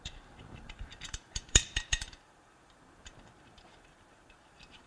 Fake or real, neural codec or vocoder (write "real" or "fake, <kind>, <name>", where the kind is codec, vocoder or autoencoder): fake, vocoder, BigVGAN v2